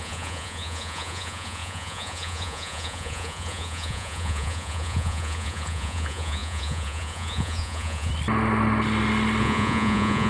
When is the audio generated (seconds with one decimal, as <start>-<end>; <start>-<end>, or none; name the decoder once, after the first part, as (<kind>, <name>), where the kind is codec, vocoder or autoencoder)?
0.0-8.1 (vocoder, Vocos); 9.4-10.3